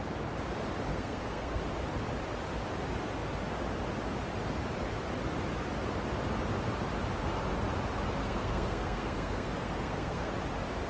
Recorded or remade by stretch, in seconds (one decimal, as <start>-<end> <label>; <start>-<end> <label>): 0.0-0.9 recorded; 0.9-1.6 remade; 1.6-8.2 recorded; 8.2-10.3 remade; 10.3-10.9 recorded